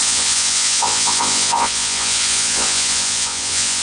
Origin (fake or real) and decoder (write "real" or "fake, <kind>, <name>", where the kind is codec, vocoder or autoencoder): fake, vocoder, Vocos